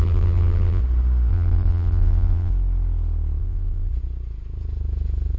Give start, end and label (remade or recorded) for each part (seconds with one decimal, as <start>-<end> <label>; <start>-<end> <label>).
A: 0.0-0.8 remade; 0.8-1.3 recorded; 1.3-2.5 remade; 2.5-3.4 recorded; 3.4-3.9 remade; 3.9-5.4 recorded